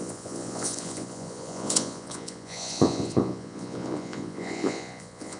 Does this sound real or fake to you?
fake